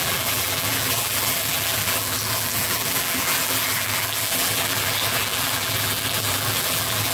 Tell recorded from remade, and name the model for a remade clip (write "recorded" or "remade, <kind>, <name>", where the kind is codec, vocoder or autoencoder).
remade, vocoder, BigVGAN v2